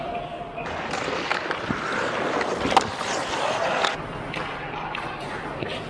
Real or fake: real